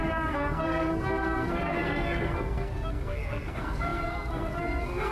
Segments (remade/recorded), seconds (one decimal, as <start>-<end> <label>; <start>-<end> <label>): 0.0-5.1 remade